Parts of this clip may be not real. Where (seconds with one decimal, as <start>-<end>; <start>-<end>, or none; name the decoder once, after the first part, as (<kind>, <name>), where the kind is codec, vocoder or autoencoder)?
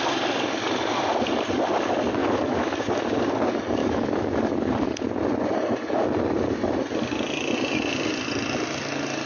2.2-2.9 (autoencoder, DAC-VAE); 3.8-4.4